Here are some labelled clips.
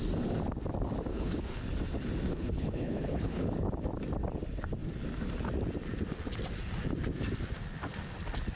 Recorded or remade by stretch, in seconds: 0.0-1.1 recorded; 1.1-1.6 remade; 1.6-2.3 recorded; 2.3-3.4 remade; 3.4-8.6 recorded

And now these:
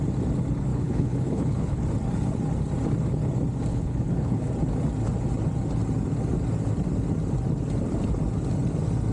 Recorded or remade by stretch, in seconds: 0.0-0.7 recorded; 0.7-1.8 remade; 1.8-3.7 recorded; 3.7-4.5 remade; 4.5-9.1 recorded

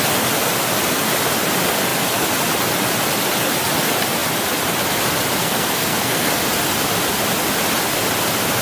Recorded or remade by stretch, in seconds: 0.0-5.4 recorded; 5.4-6.4 remade; 6.4-8.6 recorded

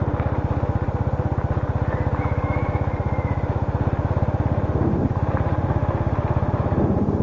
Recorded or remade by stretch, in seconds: 0.0-7.2 recorded

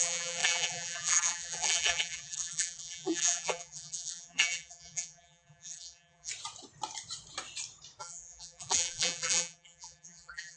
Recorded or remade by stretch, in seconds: 0.0-6.3 remade; 6.3-8.0 recorded; 8.0-10.6 remade

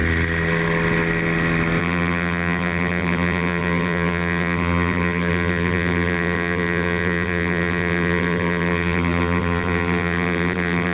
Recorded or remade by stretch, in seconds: 0.0-1.8 recorded; 1.8-10.9 remade

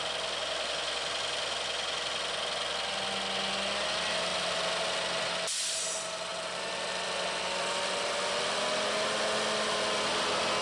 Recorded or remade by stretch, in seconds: 0.0-10.6 recorded